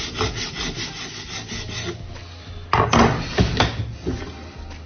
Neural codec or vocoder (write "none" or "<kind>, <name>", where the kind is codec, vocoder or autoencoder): none